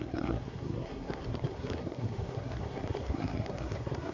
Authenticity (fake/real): fake